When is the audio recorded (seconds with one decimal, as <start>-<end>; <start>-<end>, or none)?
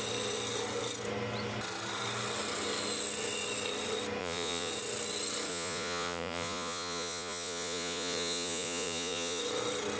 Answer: 0.0-4.2; 4.7-5.5; 9.4-10.0